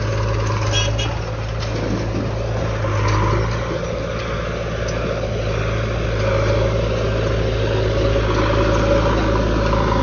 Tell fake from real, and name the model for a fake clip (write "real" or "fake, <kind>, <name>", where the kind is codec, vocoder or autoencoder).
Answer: real